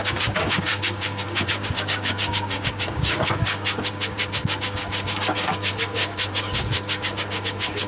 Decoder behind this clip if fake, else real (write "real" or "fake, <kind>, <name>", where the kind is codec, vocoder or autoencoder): fake, codec, DAC